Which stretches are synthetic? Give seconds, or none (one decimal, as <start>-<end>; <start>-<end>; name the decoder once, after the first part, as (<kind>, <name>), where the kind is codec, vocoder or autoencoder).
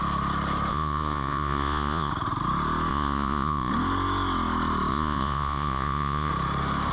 0.7-2.1 (vocoder, Vocos); 2.9-3.7; 4.9-6.3